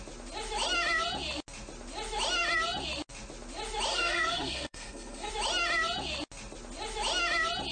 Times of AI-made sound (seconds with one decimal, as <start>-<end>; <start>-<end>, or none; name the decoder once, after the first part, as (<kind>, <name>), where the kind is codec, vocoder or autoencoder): 3.9-5.3 (codec, SNAC)